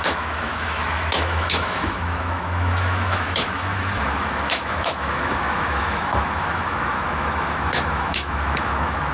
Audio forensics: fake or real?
fake